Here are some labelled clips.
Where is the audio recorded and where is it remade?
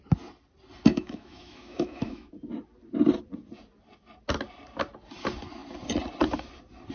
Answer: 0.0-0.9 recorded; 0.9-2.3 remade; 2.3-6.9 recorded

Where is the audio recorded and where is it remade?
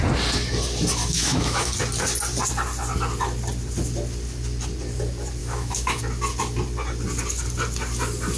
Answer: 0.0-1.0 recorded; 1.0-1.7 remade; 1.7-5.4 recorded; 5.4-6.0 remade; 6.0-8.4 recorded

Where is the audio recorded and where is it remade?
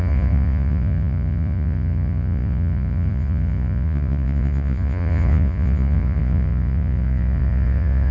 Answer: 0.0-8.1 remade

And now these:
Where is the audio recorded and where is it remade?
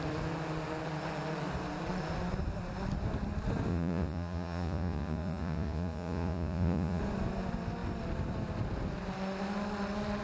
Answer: 0.0-3.7 recorded; 3.7-7.0 remade; 7.0-10.2 recorded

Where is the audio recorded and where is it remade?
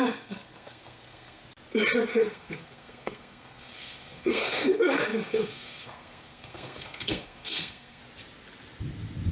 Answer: 0.0-1.4 remade; 1.4-2.1 recorded; 2.1-8.0 remade; 8.0-9.3 recorded